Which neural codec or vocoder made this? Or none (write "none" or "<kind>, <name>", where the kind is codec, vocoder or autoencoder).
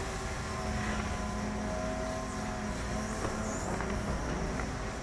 none